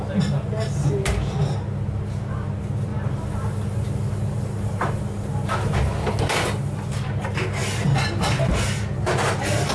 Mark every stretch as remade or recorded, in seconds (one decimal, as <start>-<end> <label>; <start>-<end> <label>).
0.0-9.7 recorded